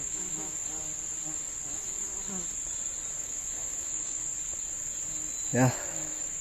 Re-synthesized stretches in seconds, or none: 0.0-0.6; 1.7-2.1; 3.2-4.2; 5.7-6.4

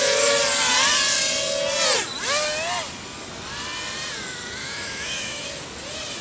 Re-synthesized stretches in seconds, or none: 4.6-5.5